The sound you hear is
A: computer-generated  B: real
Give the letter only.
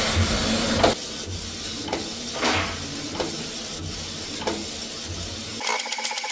B